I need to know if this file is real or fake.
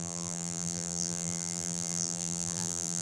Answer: fake